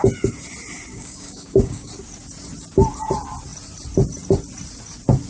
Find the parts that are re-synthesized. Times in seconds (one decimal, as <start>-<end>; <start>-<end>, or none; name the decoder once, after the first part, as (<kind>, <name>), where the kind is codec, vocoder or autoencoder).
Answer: 0.9-1.9 (codec, DAC)